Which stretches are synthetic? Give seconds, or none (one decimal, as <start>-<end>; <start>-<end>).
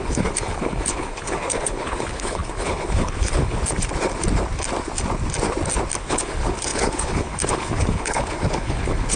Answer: 0.0-3.6; 6.0-9.2